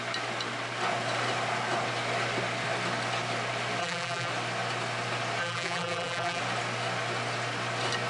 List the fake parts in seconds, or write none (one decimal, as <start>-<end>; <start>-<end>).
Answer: 3.8-4.3; 5.4-6.4